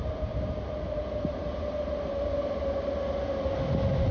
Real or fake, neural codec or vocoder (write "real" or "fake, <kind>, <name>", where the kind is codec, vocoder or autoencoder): real